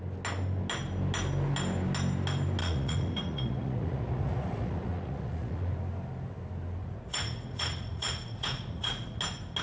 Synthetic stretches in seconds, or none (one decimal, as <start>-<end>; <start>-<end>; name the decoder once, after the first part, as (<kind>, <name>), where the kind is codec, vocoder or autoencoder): 2.6-5.7 (vocoder, Vocos); 6.8-9.2